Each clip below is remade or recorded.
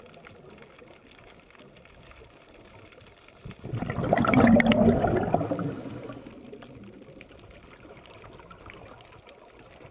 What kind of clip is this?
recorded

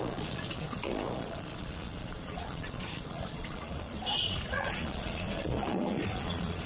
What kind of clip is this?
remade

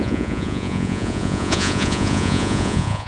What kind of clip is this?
remade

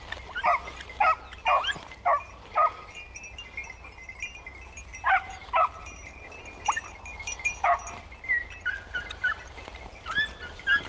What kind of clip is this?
recorded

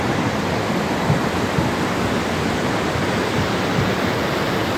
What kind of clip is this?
recorded